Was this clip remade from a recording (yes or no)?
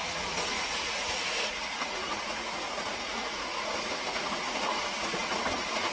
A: yes